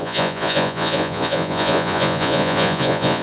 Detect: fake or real fake